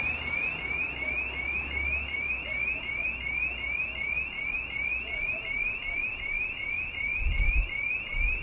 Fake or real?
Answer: real